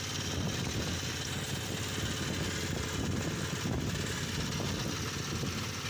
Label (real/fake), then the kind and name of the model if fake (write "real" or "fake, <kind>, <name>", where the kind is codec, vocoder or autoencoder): real